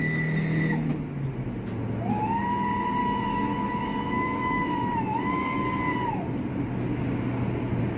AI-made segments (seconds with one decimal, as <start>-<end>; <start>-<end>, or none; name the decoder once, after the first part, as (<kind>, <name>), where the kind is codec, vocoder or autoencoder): 3.0-5.6 (autoencoder, DAC-VAE)